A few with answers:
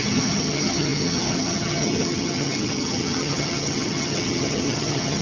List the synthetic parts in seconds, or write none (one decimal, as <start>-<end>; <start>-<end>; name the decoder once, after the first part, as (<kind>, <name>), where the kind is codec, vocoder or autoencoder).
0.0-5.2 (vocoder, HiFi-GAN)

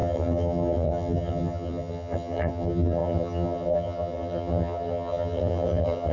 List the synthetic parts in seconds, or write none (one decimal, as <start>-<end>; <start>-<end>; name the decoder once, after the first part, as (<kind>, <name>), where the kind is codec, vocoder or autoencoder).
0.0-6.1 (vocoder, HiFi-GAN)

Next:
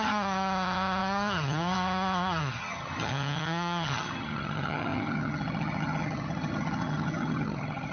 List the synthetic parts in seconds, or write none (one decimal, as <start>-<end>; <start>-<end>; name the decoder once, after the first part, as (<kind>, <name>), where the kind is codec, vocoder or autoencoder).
0.0-7.9 (vocoder, HiFi-GAN)

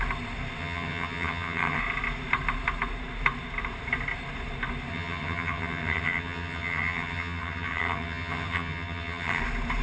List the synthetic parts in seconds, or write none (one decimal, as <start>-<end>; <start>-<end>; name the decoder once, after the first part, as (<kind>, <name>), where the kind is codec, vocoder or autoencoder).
0.6-1.8 (vocoder, HiFi-GAN); 4.9-9.4

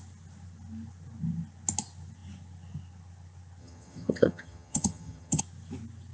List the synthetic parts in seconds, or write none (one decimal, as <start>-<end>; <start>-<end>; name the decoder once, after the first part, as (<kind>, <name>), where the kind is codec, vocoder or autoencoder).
3.6-5.4 (vocoder, HiFi-GAN)

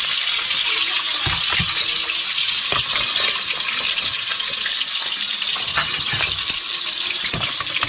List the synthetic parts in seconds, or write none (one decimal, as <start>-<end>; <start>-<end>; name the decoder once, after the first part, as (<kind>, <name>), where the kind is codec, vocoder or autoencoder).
5.7-6.2 (vocoder, HiFi-GAN)

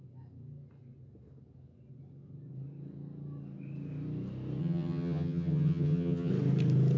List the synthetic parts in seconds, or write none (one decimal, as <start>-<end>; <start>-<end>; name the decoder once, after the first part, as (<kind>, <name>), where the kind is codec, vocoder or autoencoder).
4.6-6.3 (vocoder, HiFi-GAN)

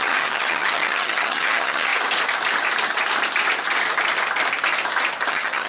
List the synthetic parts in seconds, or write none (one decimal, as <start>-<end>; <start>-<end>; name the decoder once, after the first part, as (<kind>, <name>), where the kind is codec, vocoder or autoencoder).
0.0-1.9 (vocoder, HiFi-GAN); 5.3-5.7